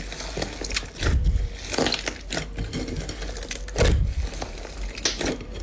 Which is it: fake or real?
real